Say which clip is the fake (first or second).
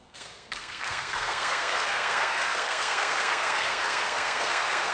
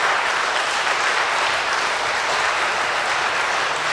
first